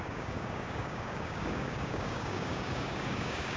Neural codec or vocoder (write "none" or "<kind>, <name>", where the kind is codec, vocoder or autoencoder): codec, DAC